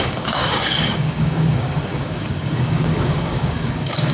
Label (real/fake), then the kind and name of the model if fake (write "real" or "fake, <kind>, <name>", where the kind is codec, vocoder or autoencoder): fake, codec, DAC